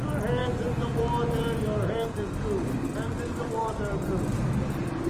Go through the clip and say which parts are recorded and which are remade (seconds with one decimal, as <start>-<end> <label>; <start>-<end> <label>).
0.0-5.1 recorded